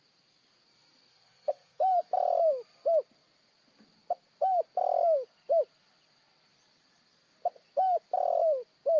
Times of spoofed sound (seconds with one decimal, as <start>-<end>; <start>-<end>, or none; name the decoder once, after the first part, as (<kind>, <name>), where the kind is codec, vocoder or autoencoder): 1.1-2.1 (codec, SNAC)